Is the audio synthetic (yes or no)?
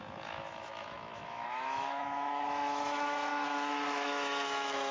yes